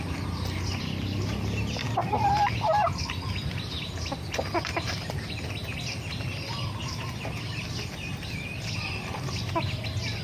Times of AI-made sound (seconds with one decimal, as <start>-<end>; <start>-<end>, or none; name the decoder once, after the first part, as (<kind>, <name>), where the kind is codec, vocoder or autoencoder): none